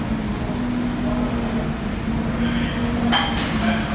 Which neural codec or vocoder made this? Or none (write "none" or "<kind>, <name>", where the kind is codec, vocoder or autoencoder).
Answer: none